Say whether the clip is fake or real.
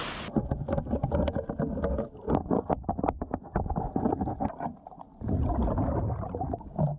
real